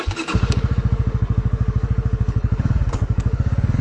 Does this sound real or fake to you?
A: fake